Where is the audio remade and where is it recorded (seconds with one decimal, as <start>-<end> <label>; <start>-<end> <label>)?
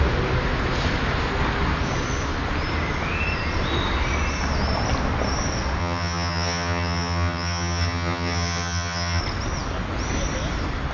0.0-5.8 recorded; 5.8-9.2 remade; 9.2-10.9 recorded